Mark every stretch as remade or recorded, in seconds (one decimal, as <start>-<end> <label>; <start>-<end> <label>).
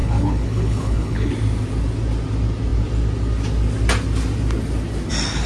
0.0-1.3 remade; 1.3-5.5 recorded